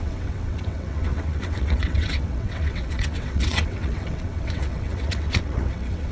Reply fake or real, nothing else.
fake